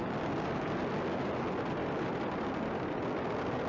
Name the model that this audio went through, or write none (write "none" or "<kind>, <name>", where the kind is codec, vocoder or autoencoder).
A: none